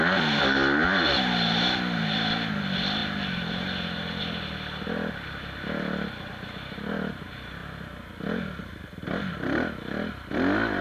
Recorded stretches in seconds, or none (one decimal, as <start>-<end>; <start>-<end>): 0.0-10.8